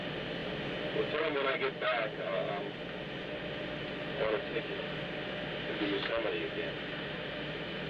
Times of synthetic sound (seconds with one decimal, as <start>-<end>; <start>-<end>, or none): none